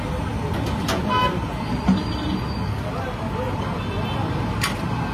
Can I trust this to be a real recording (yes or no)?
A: yes